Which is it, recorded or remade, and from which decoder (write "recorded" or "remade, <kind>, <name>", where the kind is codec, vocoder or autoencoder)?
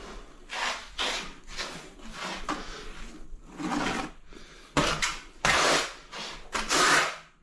recorded